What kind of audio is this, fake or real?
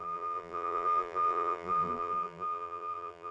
fake